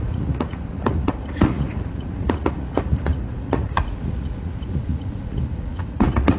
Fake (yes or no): yes